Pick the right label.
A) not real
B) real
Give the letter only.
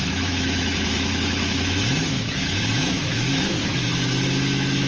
A